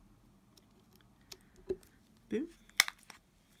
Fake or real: real